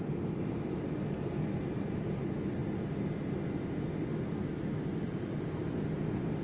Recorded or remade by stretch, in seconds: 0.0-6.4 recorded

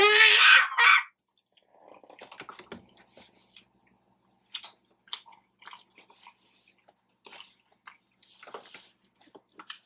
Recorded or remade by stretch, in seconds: 0.0-9.9 recorded

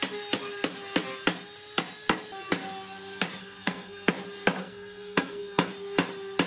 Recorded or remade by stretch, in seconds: 0.0-3.4 recorded; 3.4-4.1 remade; 4.1-4.6 recorded; 4.6-5.7 remade; 5.7-6.5 recorded

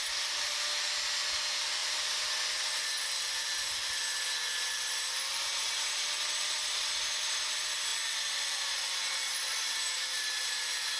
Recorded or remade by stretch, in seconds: 0.0-5.3 recorded; 5.3-5.8 remade; 5.8-7.9 recorded; 7.9-10.6 remade; 10.6-11.0 recorded

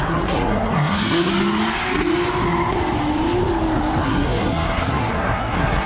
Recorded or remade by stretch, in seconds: 0.0-1.3 remade; 1.3-4.0 recorded; 4.0-5.9 remade

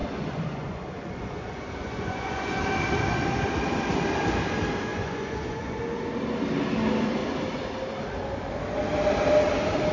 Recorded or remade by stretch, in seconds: 0.0-2.6 remade; 2.6-4.9 recorded; 4.9-5.8 remade; 5.8-9.9 recorded